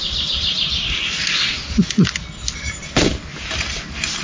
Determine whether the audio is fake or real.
real